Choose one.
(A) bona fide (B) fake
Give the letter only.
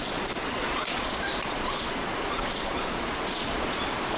B